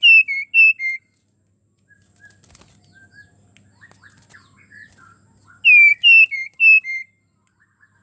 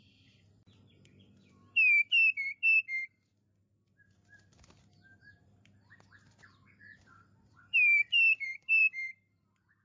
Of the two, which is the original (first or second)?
first